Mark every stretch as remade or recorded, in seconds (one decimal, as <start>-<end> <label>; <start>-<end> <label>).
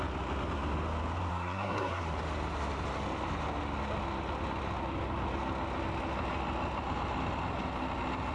0.0-1.3 recorded; 1.3-2.0 remade; 2.0-8.3 recorded